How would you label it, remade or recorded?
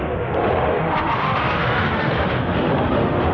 remade